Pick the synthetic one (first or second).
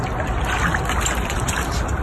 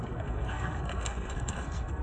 second